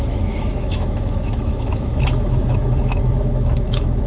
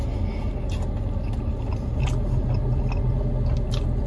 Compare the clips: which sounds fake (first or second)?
first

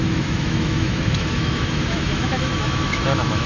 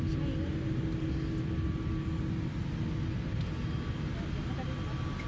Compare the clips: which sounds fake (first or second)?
first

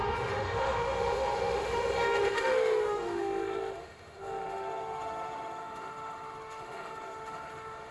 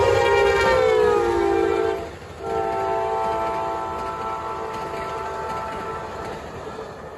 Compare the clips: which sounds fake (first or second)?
first